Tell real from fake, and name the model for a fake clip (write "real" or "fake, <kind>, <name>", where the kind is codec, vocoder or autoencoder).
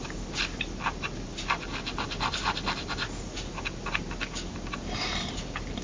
real